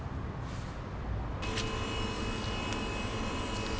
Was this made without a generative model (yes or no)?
yes